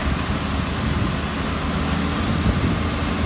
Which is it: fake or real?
real